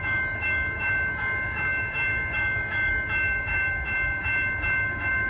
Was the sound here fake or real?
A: fake